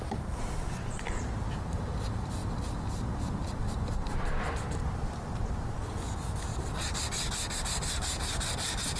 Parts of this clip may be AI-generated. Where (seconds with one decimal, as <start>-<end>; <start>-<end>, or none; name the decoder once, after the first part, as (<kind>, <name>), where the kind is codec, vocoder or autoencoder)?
0.0-6.5 (vocoder, BigVGAN v2); 7.6-9.0